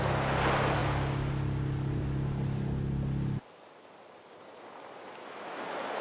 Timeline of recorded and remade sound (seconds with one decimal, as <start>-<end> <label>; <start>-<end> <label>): 0.0-6.0 recorded

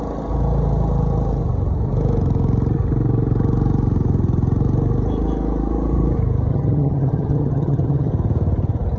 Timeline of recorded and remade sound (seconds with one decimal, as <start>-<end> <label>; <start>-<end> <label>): 0.0-6.5 recorded; 6.5-8.1 remade; 8.1-9.0 recorded

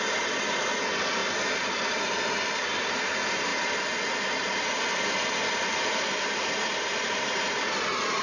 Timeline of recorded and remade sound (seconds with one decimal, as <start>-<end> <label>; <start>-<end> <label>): 0.0-8.2 recorded